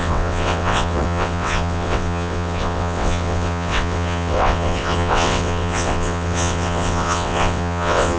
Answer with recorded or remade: remade